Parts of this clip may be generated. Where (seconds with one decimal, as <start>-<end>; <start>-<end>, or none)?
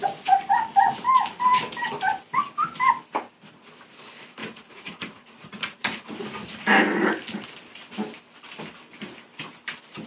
4.4-6.0